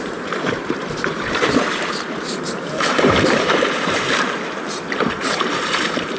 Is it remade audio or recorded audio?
remade